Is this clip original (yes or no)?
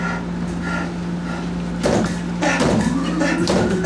yes